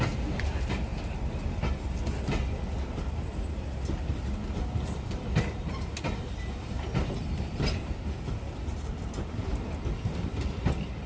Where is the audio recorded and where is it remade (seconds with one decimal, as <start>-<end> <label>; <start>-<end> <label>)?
0.0-11.1 recorded